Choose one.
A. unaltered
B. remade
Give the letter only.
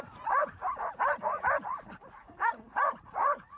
B